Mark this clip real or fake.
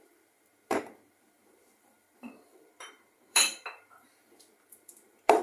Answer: fake